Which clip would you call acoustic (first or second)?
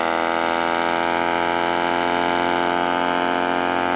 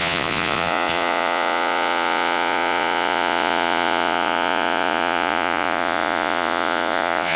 first